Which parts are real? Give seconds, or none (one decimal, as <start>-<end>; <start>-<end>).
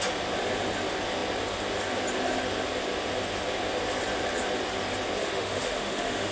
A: 0.0-5.2